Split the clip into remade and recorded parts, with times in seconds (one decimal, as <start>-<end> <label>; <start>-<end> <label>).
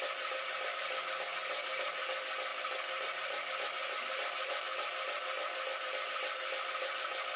0.0-7.4 recorded